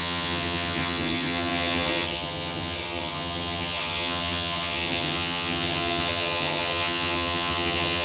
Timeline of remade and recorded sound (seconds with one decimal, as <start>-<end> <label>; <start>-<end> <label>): 0.0-8.0 remade